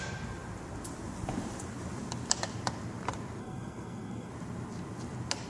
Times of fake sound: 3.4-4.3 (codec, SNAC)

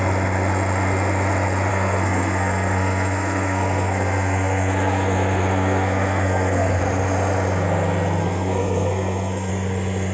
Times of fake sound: 1.7-6.8 (codec, SNAC); 8.2-9.5